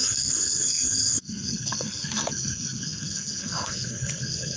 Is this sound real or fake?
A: fake